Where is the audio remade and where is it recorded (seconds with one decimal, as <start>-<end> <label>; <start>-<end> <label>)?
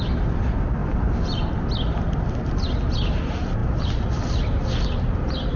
0.0-5.6 recorded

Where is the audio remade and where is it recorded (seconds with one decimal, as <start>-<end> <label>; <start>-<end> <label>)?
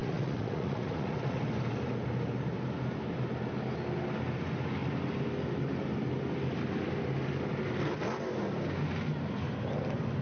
0.0-1.4 remade; 1.4-10.2 recorded